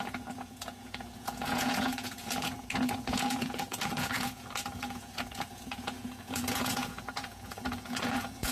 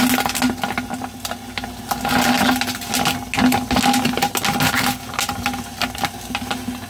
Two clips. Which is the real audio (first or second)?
second